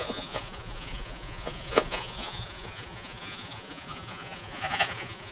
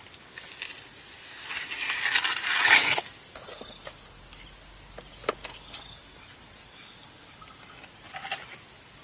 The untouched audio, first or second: second